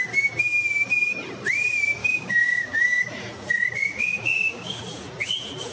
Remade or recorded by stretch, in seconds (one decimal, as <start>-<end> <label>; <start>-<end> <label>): 0.0-2.0 recorded; 2.0-3.0 remade; 3.0-4.3 recorded; 4.3-4.8 remade; 4.8-5.7 recorded